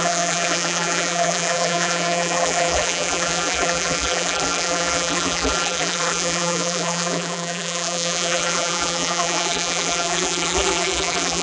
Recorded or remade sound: remade